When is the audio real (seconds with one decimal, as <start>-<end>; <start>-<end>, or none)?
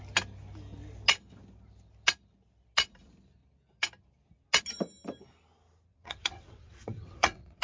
0.0-5.9